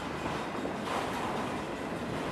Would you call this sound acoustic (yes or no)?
yes